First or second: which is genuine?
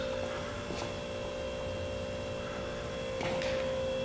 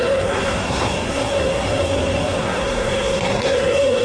first